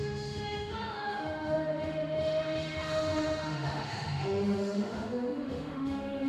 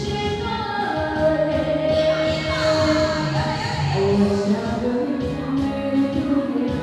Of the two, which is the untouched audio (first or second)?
second